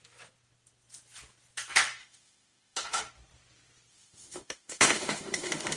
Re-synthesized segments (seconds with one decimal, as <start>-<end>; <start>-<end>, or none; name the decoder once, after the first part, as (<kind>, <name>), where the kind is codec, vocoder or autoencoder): 2.0-3.0 (autoencoder, DAC-VAE); 3.9-5.8